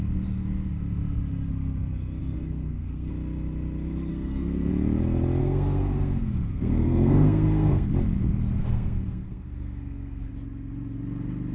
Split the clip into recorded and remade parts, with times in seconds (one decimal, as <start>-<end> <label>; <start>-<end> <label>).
0.0-2.2 recorded; 2.2-3.1 remade; 3.1-4.1 recorded; 4.1-4.7 remade; 4.7-5.4 recorded; 5.4-7.9 remade; 7.9-8.6 recorded; 8.6-10.3 remade; 10.3-11.5 recorded